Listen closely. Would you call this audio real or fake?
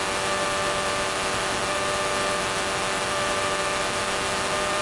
real